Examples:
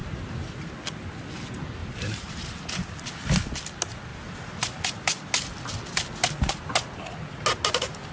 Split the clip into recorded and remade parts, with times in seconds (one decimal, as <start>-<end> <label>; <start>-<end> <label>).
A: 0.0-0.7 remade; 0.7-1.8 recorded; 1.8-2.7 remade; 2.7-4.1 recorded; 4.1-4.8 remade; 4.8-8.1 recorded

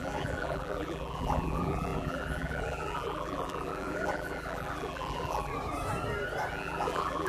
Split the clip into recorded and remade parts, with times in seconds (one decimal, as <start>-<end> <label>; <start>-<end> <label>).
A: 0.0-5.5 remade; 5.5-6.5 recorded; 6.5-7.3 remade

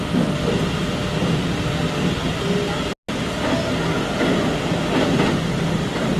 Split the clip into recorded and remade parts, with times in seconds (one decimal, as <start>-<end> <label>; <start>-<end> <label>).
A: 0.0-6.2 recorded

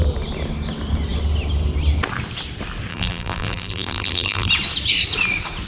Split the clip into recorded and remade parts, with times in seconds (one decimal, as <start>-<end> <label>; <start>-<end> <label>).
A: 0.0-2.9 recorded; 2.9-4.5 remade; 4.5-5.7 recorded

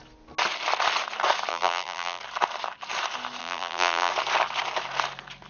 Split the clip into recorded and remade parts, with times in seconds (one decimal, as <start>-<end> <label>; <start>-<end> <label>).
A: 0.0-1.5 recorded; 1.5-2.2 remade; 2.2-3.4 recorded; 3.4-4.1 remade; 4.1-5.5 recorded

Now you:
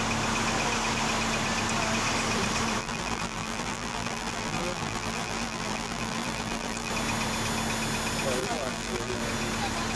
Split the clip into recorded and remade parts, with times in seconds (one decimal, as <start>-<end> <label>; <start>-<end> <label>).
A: 0.0-2.8 recorded; 2.8-6.9 remade; 6.9-8.4 recorded; 8.4-9.2 remade; 9.2-10.0 recorded

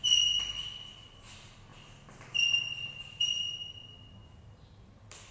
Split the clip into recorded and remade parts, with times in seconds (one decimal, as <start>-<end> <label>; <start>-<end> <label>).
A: 0.0-5.3 recorded